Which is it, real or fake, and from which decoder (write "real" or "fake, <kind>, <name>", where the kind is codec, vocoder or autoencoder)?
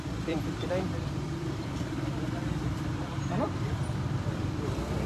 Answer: fake, vocoder, BigVGAN v2